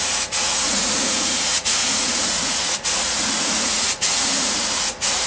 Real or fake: fake